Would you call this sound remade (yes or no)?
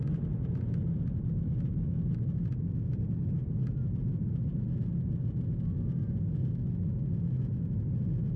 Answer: no